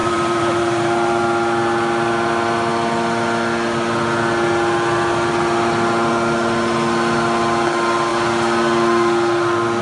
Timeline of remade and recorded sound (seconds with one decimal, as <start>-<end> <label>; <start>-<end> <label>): 0.0-1.2 remade; 1.2-9.8 recorded